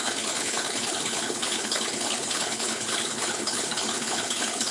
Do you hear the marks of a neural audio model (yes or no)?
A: yes